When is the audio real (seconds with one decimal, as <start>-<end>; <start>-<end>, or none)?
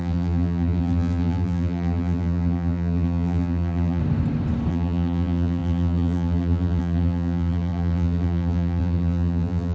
4.0-4.7